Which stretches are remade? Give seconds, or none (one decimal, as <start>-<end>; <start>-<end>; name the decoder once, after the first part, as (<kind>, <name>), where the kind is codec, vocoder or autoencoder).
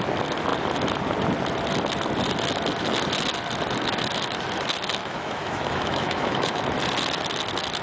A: 5.0-6.6 (autoencoder, DAC-VAE)